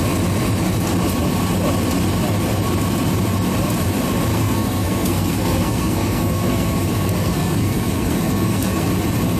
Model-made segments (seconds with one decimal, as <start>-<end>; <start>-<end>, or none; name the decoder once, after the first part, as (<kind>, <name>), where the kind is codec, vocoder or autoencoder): 4.3-8.9 (codec, SNAC)